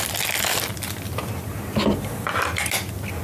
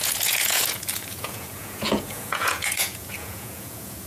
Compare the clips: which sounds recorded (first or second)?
first